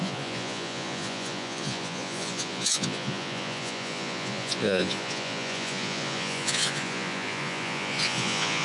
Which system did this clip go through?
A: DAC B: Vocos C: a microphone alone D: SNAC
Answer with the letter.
B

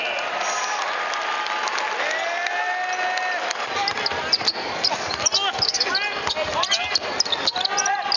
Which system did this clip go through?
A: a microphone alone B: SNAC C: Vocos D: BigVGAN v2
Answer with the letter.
A